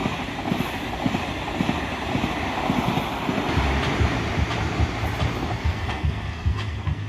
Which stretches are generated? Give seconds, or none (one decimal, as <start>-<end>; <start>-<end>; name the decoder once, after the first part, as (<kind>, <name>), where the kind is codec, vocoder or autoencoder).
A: 5.6-7.1 (codec, SNAC)